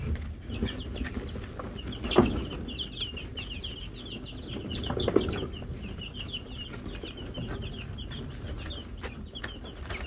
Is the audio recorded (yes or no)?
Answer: yes